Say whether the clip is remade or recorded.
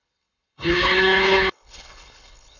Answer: remade